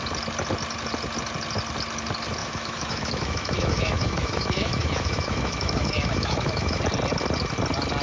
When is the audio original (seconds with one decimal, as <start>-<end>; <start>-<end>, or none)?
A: 0.0-2.4; 6.8-8.0

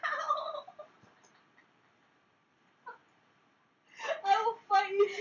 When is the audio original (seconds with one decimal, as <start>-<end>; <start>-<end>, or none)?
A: 0.0-5.2

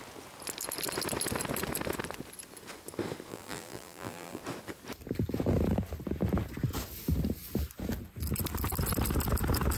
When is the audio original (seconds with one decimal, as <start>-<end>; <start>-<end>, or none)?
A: 0.0-3.3; 4.4-9.8

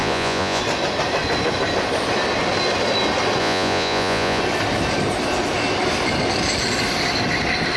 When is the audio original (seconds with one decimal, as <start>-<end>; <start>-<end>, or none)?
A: 0.6-3.4; 4.4-7.8

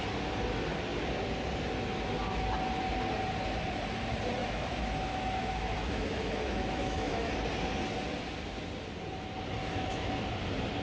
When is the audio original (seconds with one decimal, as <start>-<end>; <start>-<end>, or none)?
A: 0.0-4.4; 7.3-9.6; 10.1-10.8

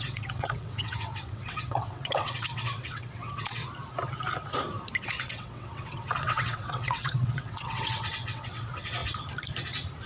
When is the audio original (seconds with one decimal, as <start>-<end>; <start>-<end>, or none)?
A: 3.6-5.0; 9.0-10.1